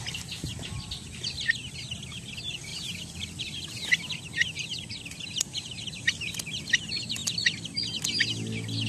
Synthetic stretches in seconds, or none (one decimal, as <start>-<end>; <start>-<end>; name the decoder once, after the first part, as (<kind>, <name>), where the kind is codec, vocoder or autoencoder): 2.7-6.8 (vocoder, BigVGAN v2); 7.2-8.0